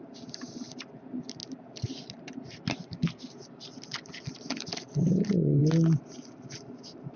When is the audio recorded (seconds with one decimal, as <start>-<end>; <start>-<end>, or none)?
0.0-7.2